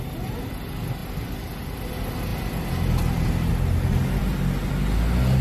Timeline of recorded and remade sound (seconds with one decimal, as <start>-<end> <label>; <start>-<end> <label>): 0.0-5.4 recorded